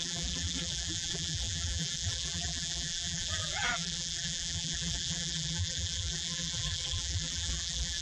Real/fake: fake